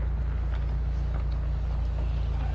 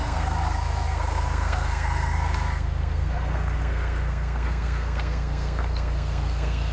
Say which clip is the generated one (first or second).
second